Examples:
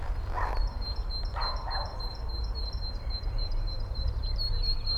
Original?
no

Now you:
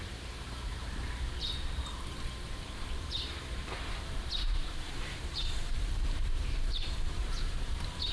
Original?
no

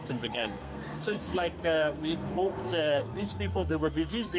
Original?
no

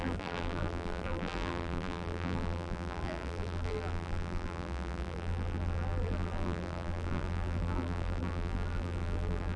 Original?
no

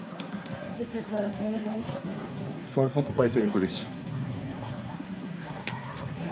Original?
no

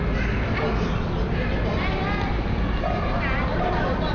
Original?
yes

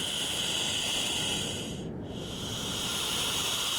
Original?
yes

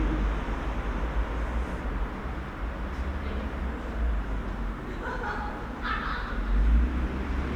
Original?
yes